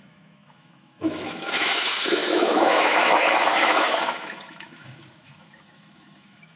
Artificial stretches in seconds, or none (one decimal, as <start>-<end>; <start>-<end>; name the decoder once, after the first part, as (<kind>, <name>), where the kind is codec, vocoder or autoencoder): 0.0-6.6 (autoencoder, DAC-VAE)